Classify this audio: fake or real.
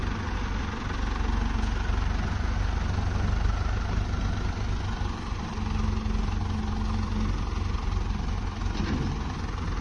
real